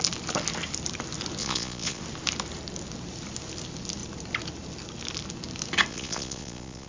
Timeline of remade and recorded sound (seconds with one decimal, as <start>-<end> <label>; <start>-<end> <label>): 0.0-1.4 recorded; 1.4-2.0 remade; 2.0-5.9 recorded; 5.9-6.9 remade